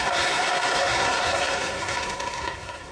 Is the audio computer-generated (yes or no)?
yes